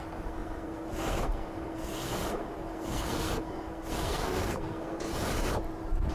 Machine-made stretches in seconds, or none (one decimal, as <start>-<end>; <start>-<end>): 0.0-5.1